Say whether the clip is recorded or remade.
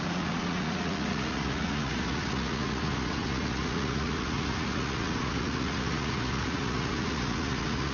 remade